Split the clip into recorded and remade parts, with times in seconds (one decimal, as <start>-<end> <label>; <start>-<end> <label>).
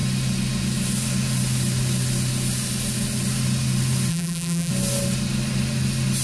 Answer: 0.0-4.1 recorded; 4.1-4.7 remade; 4.7-6.2 recorded